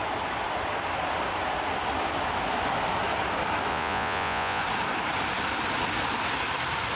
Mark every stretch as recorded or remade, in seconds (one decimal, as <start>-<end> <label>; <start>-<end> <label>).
0.0-3.7 recorded; 3.7-4.6 remade; 4.6-7.0 recorded